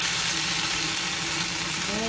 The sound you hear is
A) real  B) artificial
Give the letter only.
A